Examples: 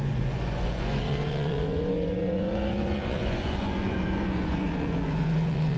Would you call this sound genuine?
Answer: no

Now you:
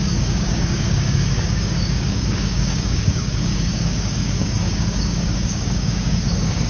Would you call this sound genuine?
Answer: no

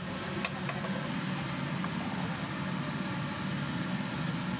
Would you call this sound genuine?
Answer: yes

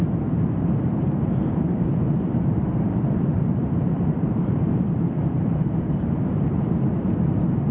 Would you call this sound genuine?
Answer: no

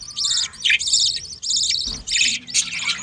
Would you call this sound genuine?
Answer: yes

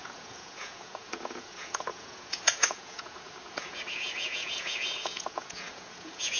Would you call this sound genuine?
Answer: no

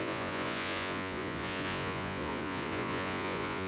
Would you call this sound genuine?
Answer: no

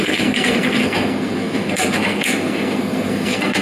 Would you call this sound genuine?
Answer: no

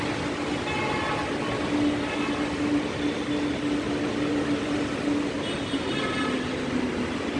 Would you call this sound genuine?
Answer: yes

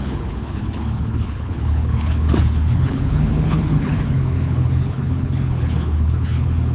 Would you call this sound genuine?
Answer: no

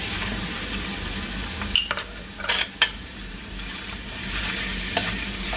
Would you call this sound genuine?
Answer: no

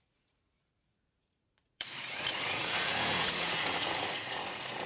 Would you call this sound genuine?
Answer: no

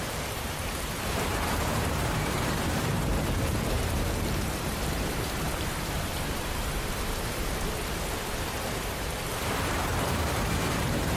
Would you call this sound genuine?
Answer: no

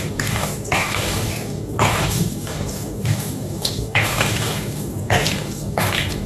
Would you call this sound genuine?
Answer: no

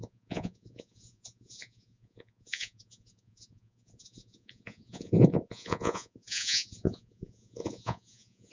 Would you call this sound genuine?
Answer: no